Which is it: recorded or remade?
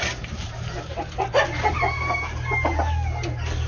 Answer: recorded